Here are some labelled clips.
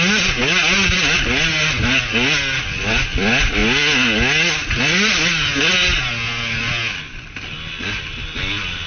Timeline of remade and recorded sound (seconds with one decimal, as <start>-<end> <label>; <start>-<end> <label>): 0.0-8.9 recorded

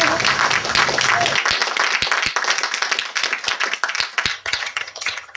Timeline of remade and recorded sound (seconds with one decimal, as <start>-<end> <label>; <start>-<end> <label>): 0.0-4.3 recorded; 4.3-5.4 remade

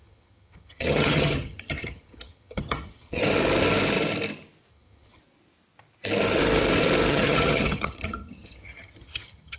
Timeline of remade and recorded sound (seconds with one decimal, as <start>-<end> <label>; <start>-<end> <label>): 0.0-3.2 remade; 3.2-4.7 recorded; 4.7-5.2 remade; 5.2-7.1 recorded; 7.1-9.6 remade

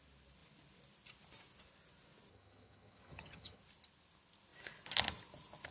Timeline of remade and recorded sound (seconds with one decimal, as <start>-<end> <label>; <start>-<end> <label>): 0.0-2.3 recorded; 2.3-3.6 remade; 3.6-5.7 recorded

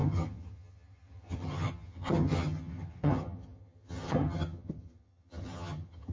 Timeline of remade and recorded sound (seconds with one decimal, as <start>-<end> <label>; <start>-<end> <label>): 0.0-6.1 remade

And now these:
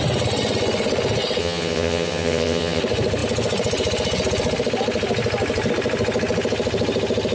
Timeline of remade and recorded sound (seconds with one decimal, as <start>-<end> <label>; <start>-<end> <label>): 0.0-1.4 recorded; 1.4-2.8 remade; 2.8-7.3 recorded